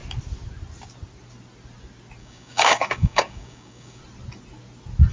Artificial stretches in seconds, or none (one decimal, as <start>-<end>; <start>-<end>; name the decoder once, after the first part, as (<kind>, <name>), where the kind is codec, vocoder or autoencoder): 2.2-4.0 (codec, DAC)